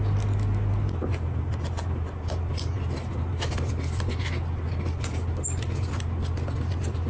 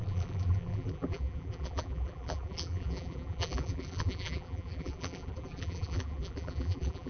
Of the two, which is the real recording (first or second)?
first